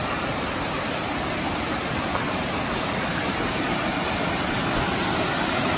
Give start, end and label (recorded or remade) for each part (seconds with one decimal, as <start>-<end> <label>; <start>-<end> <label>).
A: 0.0-2.7 remade; 2.7-3.1 recorded; 3.1-3.9 remade; 3.9-5.8 recorded